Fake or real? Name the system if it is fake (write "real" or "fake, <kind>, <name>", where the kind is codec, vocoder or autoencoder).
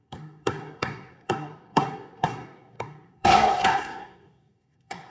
fake, codec, SNAC